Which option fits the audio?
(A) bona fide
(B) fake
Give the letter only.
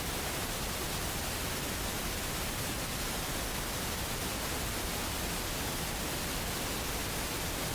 A